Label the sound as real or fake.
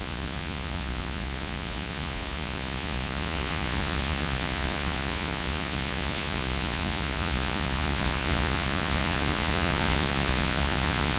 fake